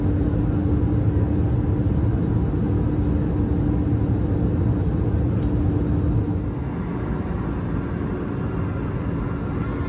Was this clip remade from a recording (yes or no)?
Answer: no